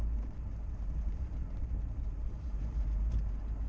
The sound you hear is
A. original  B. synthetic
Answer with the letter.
B